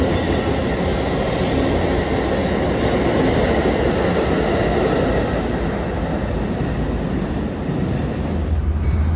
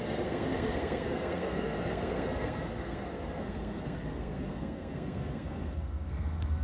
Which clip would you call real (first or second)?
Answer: first